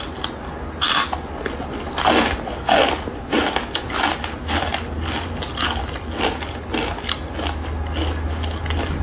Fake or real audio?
real